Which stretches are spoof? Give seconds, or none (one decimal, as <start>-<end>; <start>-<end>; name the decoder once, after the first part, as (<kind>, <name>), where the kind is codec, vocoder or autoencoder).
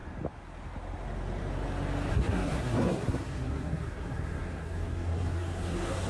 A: 2.1-6.1 (codec, SNAC)